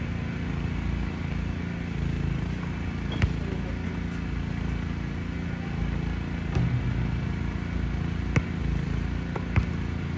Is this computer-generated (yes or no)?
no